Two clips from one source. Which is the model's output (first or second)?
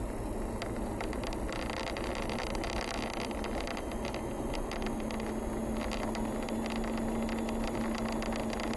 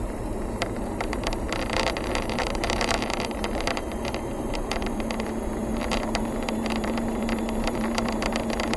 second